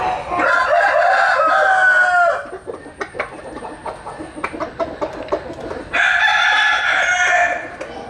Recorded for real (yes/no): yes